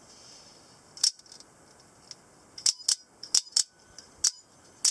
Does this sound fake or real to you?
real